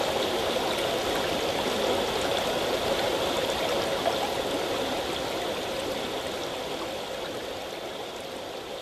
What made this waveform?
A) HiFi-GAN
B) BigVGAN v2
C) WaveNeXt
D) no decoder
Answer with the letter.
D